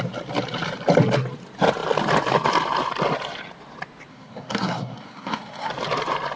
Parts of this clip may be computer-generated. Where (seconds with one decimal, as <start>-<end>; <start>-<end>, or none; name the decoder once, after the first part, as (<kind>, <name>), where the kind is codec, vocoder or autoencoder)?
4.1-5.7 (codec, SNAC)